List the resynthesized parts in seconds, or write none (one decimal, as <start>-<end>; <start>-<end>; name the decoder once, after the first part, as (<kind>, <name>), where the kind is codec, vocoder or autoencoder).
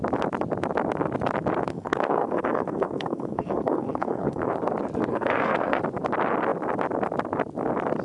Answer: 1.7-4.5 (codec, SNAC); 5.1-5.8